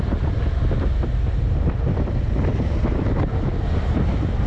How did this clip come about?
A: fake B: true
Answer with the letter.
A